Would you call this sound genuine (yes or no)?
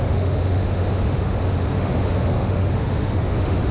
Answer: no